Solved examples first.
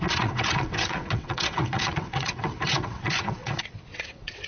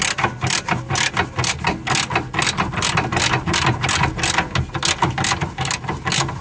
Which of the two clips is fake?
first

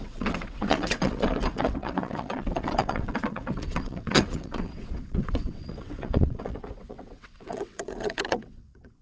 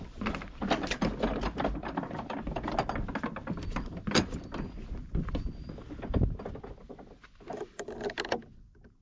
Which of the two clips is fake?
first